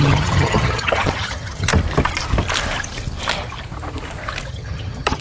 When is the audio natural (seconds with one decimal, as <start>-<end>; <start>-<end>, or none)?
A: 1.7-4.5